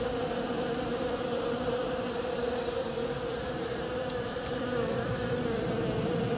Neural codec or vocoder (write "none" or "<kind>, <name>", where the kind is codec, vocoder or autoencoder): vocoder, BigVGAN v2